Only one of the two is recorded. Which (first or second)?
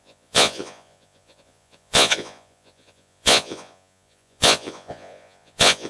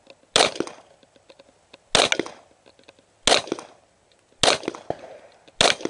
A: second